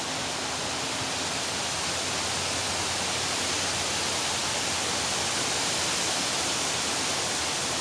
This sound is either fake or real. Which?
real